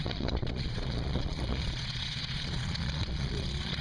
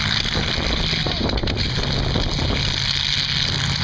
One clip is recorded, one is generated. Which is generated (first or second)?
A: first